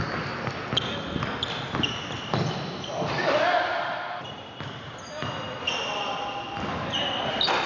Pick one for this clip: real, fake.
real